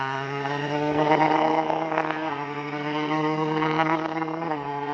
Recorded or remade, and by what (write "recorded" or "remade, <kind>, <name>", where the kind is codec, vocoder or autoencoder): remade, codec, SNAC